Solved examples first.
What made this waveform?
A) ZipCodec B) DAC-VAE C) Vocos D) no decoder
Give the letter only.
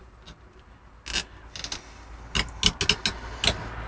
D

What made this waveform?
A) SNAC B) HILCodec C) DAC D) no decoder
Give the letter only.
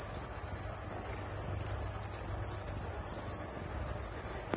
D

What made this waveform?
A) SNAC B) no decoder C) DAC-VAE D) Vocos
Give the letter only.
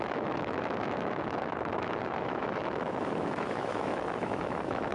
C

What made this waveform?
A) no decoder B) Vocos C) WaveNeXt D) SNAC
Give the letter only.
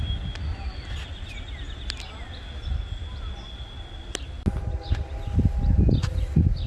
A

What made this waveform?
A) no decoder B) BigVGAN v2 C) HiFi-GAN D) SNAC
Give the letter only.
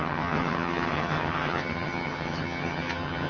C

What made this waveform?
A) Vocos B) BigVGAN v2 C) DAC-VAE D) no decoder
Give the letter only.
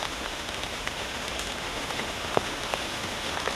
C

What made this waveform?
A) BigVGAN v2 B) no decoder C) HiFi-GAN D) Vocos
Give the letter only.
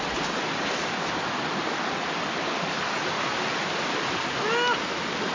B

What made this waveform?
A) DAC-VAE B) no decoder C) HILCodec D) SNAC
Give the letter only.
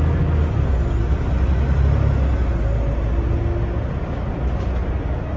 B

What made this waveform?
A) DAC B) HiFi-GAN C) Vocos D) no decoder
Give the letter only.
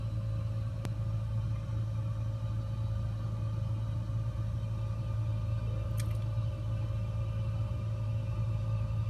D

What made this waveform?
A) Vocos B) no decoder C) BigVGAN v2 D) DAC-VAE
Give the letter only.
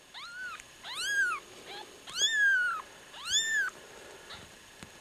B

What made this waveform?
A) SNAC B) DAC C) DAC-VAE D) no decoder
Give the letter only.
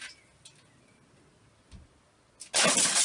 D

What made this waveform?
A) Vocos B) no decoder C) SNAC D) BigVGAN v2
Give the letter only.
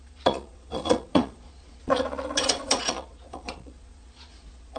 A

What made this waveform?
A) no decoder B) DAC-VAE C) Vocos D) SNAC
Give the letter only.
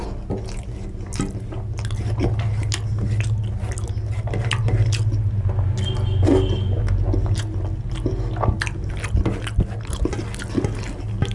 A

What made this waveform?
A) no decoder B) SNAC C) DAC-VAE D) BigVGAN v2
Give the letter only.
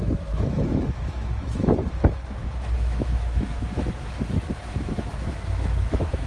C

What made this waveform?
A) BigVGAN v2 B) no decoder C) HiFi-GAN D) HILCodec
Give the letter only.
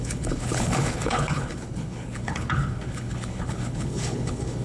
D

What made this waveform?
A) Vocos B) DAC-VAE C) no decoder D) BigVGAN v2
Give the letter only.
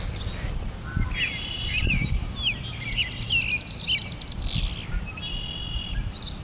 C